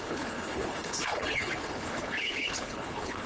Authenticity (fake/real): fake